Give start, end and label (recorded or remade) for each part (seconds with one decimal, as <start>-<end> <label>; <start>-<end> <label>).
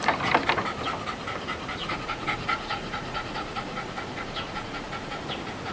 0.0-1.8 recorded; 1.8-5.2 remade; 5.2-5.7 recorded